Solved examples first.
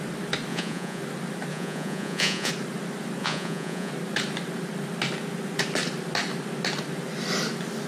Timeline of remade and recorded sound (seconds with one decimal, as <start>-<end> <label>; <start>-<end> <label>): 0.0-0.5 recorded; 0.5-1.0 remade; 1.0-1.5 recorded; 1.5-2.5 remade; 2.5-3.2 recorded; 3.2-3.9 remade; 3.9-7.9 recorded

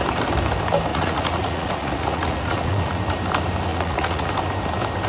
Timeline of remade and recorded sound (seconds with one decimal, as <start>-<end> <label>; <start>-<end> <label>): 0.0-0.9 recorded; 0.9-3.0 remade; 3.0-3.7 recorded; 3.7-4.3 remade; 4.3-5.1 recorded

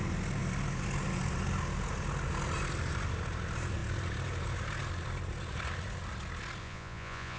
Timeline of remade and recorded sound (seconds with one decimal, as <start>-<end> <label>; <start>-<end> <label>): 0.0-6.6 recorded; 6.6-7.4 remade